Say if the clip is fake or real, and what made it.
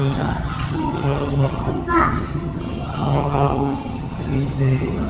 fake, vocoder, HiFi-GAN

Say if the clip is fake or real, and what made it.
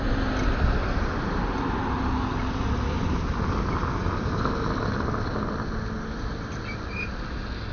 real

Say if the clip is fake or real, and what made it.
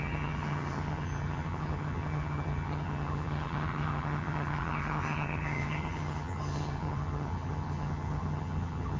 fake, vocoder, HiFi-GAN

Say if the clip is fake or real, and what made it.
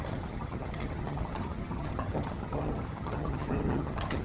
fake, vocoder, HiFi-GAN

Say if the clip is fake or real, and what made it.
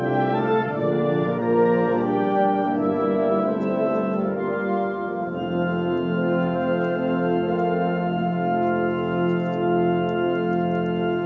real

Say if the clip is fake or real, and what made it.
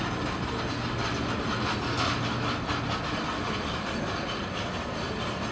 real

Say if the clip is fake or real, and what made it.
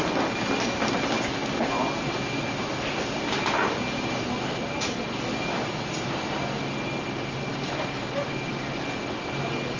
real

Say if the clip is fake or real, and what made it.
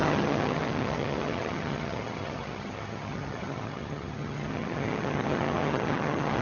fake, vocoder, HiFi-GAN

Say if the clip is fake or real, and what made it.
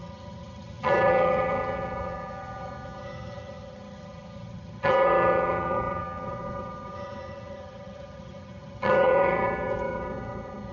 fake, vocoder, HiFi-GAN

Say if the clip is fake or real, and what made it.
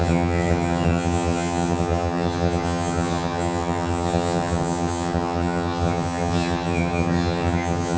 fake, vocoder, HiFi-GAN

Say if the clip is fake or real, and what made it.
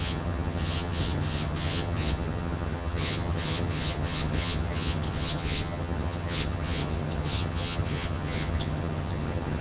fake, vocoder, HiFi-GAN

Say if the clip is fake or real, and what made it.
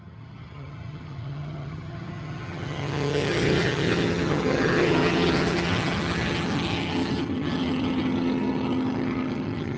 fake, vocoder, HiFi-GAN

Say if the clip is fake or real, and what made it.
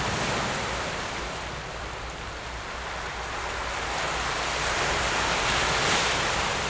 real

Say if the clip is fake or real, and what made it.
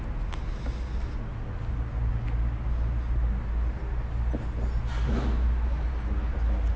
real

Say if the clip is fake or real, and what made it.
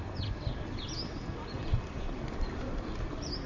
real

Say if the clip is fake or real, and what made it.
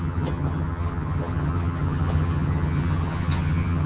fake, vocoder, HiFi-GAN